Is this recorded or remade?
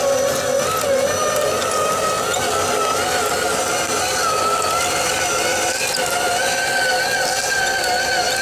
recorded